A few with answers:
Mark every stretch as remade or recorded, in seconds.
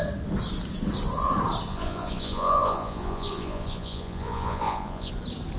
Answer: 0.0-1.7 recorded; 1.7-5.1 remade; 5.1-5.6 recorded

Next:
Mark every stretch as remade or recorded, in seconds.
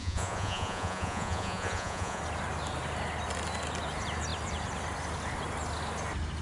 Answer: 0.0-2.2 remade; 2.2-6.4 recorded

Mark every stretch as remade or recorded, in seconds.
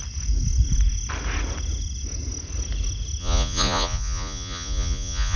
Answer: 0.0-3.2 recorded; 3.2-5.4 remade